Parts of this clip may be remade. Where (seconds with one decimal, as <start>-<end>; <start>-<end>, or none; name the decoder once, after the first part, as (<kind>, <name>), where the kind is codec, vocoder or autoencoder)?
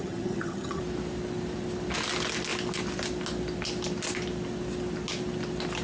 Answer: 0.0-0.8 (vocoder, HiFi-GAN)